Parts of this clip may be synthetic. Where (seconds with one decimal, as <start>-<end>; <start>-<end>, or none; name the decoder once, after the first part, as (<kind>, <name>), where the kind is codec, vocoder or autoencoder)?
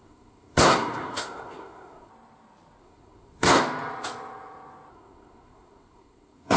0.0-2.1 (codec, SNAC); 2.8-3.6; 4.9-6.6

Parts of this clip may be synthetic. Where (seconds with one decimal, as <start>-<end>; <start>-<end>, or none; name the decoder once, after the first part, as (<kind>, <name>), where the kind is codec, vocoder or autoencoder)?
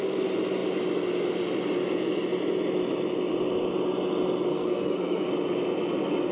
4.5-5.3 (codec, SNAC)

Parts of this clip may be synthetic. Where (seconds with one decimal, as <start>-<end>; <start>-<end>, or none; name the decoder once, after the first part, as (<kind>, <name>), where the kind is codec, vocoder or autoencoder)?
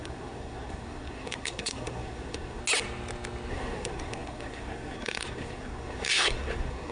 0.0-2.6 (codec, SNAC); 3.5-6.9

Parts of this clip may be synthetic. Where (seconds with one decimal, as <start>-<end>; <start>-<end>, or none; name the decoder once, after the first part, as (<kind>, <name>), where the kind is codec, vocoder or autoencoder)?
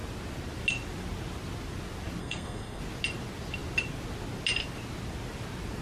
2.2-2.8 (codec, SNAC)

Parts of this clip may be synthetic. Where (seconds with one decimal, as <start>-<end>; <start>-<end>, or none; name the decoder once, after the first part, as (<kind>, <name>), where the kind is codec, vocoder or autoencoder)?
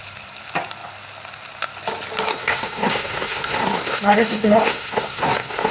2.3-5.7 (codec, SNAC)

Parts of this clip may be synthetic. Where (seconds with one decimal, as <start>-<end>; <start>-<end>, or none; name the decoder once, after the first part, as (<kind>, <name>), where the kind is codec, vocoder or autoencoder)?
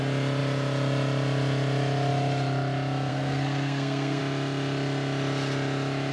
3.1-4.2 (codec, SNAC)